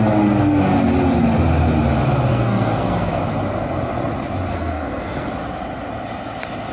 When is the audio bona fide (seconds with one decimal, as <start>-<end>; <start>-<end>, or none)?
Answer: 0.0-2.3; 3.2-4.5; 5.3-6.7